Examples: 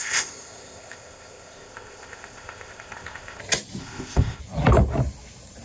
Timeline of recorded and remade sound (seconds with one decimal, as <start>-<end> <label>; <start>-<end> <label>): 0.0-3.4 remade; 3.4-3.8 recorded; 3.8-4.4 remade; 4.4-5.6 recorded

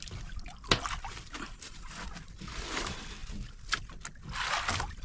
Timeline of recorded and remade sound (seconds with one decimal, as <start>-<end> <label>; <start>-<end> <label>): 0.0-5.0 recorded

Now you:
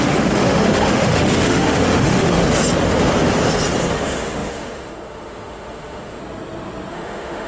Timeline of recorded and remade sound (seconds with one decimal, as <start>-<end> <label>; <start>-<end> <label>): 0.0-2.4 remade; 2.4-3.9 recorded; 3.9-6.2 remade; 6.2-6.9 recorded; 6.9-7.5 remade

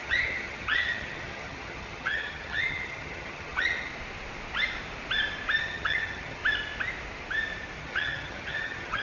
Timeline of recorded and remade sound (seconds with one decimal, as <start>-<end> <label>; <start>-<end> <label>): 0.0-3.9 remade; 3.9-5.6 recorded; 5.6-6.4 remade; 6.4-7.8 recorded; 7.8-9.0 remade

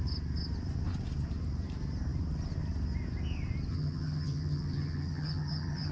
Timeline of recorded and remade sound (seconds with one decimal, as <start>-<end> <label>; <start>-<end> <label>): 0.0-3.7 recorded; 3.7-5.9 remade

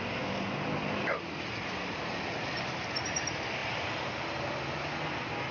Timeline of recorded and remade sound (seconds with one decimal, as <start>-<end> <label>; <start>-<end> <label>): 0.0-5.5 recorded

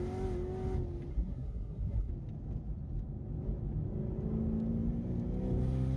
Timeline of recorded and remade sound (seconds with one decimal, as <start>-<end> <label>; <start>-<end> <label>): 0.0-1.1 recorded; 1.1-2.1 remade; 2.1-6.0 recorded